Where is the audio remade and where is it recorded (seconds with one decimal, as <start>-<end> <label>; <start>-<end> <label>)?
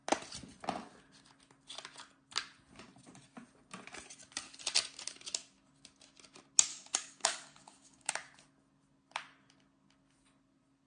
0.0-6.7 recorded; 6.7-8.1 remade; 8.1-10.9 recorded